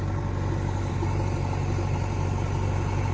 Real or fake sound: fake